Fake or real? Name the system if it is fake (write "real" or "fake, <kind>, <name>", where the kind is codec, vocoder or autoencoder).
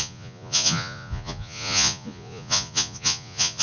fake, vocoder, Vocos